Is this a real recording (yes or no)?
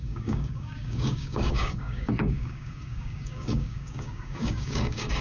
no